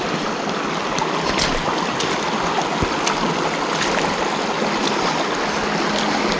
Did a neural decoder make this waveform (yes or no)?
no